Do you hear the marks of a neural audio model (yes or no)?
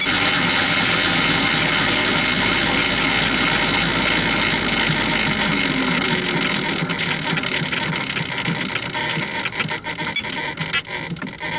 no